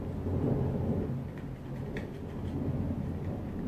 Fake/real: real